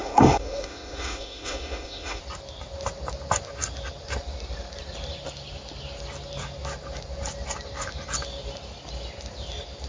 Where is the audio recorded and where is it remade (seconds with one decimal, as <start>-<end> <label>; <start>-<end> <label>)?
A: 0.0-2.2 remade; 2.2-9.9 recorded